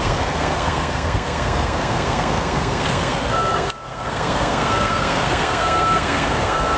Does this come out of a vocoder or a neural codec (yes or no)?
yes